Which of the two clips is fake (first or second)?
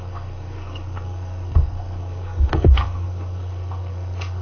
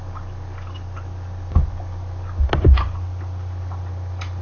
first